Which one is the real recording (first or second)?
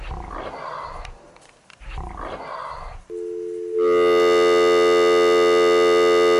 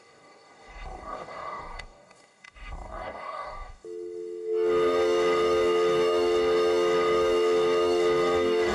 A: first